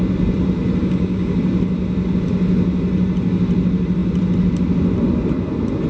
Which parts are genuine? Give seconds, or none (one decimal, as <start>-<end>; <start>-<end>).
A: 0.0-0.8; 1.4-5.9